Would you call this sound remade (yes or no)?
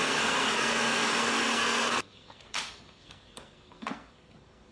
yes